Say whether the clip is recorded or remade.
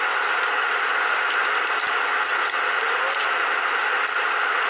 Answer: recorded